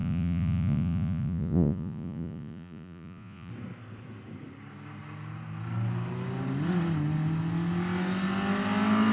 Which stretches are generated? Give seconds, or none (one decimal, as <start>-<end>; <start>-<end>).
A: 0.0-3.5